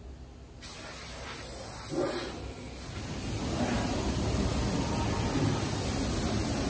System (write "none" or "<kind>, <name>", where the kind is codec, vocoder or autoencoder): none